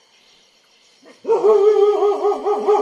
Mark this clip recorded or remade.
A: recorded